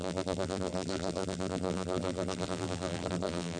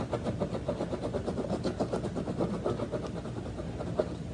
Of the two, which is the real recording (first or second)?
second